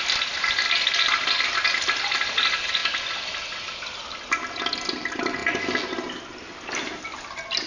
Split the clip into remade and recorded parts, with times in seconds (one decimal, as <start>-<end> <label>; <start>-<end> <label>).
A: 0.0-2.8 recorded; 2.8-4.5 remade; 4.5-7.7 recorded